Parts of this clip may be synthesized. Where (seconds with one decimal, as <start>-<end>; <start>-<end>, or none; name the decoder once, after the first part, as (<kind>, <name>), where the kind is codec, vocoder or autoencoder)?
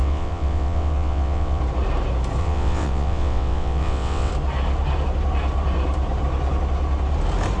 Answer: 0.0-1.6 (vocoder, WaveNeXt); 2.4-4.3